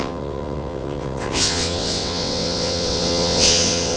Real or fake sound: fake